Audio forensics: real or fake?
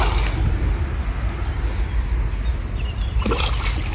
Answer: real